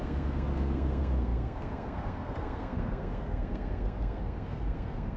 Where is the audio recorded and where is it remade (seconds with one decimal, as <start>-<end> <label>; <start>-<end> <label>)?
0.0-5.2 remade